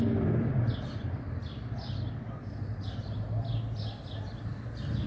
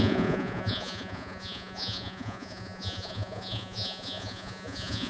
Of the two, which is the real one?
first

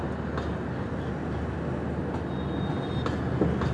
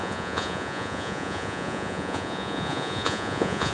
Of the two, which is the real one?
first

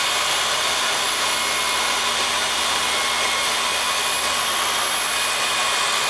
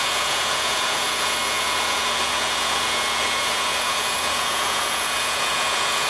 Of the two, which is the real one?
first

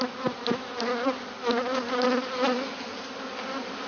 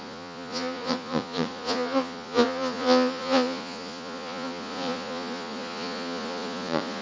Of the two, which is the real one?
first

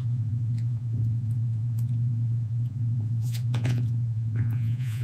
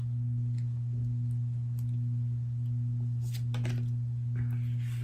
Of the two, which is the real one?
second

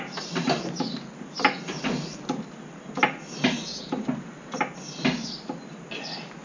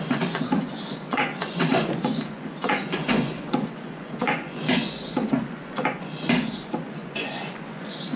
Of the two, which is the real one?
first